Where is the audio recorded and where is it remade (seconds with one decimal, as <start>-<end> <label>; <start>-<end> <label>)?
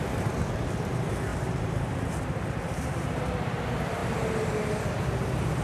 0.0-1.3 recorded; 1.3-3.2 remade; 3.2-5.6 recorded